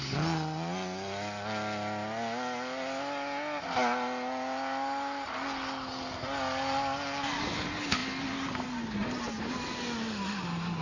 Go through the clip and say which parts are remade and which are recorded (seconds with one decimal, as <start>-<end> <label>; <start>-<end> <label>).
0.0-10.8 recorded